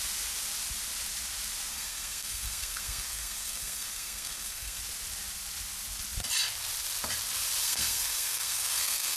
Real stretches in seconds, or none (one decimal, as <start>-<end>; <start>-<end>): 0.0-1.7; 4.8-7.6